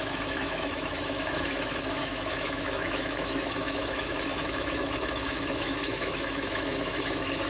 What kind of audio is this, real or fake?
fake